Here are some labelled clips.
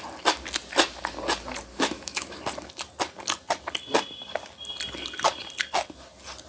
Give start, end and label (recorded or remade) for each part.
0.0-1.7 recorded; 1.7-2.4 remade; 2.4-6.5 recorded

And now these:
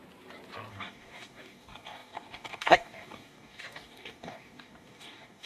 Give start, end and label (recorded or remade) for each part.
0.0-0.7 recorded; 0.7-5.5 remade

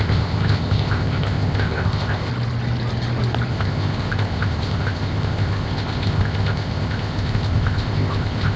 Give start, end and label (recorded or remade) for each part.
0.0-2.3 remade; 2.3-3.5 recorded; 3.5-8.6 remade

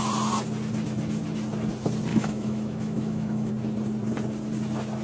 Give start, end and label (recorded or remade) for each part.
0.0-2.1 recorded; 2.1-3.5 remade; 3.5-5.0 recorded